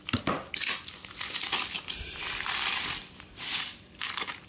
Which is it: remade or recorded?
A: recorded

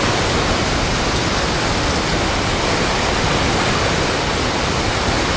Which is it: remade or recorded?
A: recorded